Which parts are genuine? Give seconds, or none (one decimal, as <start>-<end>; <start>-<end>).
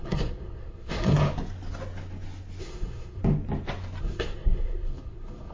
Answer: 1.2-2.6; 3.2-4.0